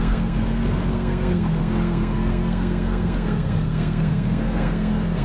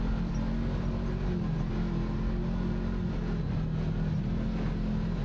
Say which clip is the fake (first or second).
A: first